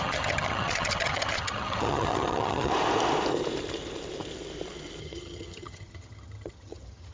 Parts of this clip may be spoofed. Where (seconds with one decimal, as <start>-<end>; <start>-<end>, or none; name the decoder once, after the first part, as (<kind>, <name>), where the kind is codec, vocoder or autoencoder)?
0.0-2.7 (vocoder, HiFi-GAN); 5.0-7.1